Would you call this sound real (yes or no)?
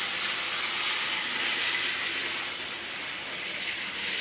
yes